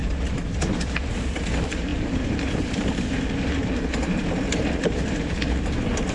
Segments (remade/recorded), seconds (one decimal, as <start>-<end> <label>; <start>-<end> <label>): 0.0-6.1 remade